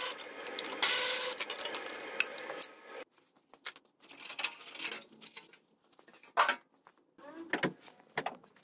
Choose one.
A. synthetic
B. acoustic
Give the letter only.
B